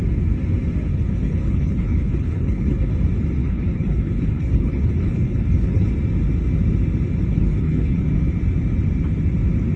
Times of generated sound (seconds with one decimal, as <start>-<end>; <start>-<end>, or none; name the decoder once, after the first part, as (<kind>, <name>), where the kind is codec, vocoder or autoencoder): 0.9-2.9 (codec, HILCodec); 3.4-5.9; 7.3-8.0